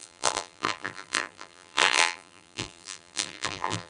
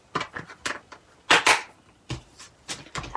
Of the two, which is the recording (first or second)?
second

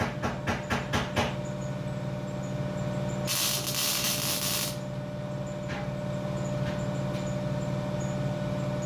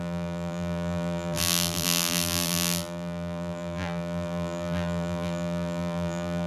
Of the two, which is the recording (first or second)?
first